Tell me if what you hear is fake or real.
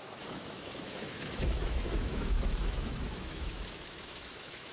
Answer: fake